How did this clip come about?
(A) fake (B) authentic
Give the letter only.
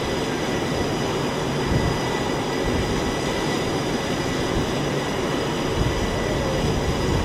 B